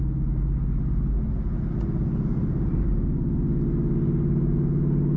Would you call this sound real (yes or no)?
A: yes